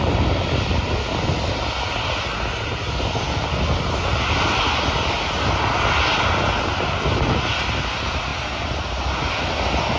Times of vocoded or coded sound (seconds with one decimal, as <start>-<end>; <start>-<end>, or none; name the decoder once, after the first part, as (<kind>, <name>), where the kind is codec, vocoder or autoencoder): none